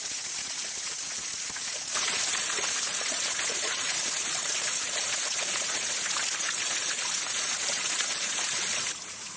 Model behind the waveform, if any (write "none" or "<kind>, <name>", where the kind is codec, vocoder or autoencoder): vocoder, Vocos